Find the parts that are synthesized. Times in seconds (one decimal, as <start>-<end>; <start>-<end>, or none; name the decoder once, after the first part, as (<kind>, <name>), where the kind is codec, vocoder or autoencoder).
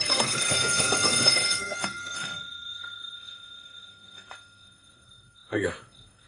0.0-6.3 (codec, SNAC)